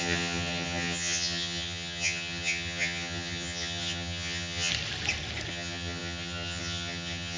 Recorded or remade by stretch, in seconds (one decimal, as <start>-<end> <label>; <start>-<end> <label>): 0.0-4.7 remade; 4.7-5.5 recorded; 5.5-7.4 remade